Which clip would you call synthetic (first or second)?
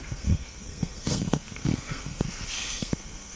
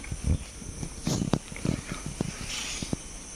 first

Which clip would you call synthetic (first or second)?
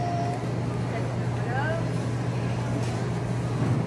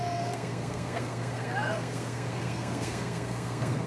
second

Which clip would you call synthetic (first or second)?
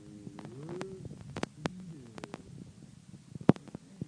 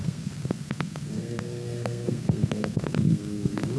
second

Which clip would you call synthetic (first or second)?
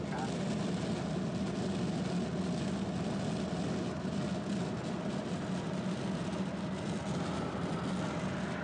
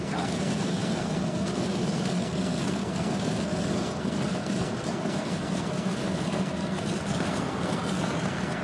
second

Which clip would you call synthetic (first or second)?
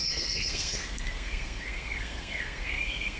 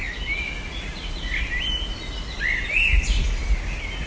first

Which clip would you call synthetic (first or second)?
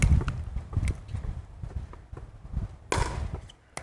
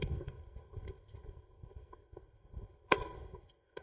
second